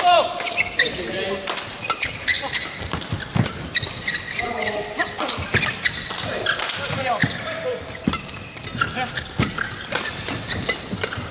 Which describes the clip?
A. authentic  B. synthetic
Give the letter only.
A